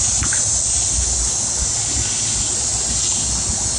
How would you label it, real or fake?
real